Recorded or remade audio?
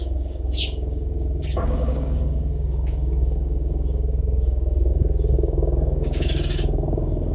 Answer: remade